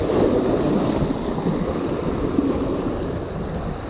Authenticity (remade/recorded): recorded